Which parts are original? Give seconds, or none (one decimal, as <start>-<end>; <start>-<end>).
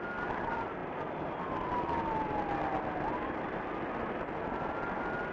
0.0-5.3